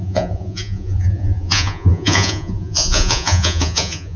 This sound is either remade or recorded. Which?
remade